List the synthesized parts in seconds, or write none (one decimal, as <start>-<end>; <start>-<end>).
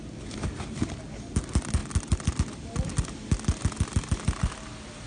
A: none